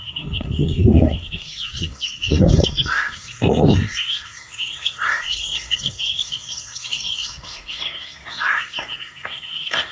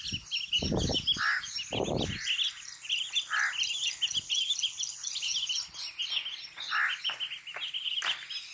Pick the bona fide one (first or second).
second